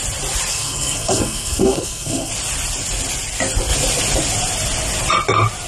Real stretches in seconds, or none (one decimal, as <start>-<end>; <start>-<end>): 0.0-0.5; 2.3-5.7